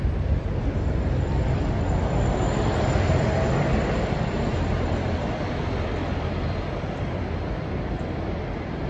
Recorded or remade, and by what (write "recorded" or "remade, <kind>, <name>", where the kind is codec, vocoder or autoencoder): remade, vocoder, BigVGAN v2